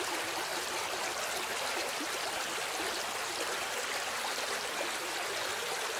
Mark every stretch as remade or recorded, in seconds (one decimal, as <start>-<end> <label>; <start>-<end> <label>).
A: 0.0-6.0 recorded